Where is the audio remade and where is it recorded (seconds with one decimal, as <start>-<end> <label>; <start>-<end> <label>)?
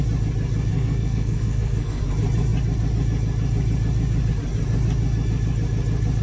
0.0-0.7 recorded; 0.7-2.0 remade; 2.0-6.2 recorded